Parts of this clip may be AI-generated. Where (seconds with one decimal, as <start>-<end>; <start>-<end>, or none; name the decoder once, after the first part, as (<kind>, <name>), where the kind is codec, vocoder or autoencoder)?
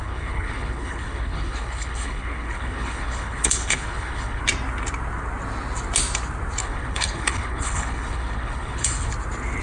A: 0.0-4.4 (codec, HILCodec); 6.6-9.1